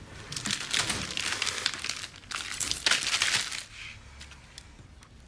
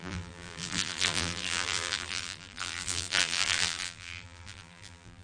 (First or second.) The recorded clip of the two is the first